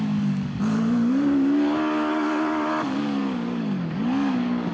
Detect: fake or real fake